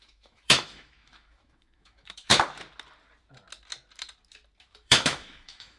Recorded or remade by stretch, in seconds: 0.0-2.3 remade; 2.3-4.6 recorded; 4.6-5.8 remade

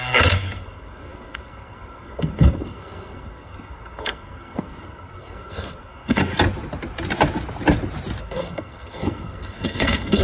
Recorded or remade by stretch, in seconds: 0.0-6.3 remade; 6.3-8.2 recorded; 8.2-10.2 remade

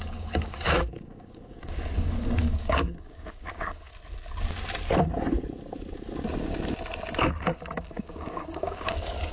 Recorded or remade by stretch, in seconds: 0.0-3.9 remade; 3.9-7.4 recorded; 7.4-9.3 remade

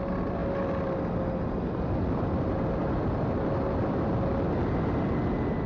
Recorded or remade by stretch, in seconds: 0.0-5.7 recorded

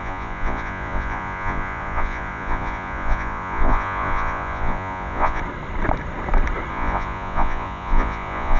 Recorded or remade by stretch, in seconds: 0.0-5.4 remade; 5.4-6.7 recorded; 6.7-8.6 remade

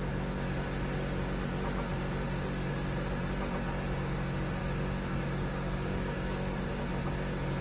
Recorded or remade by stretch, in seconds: 0.0-4.6 recorded; 4.6-6.8 remade; 6.8-7.6 recorded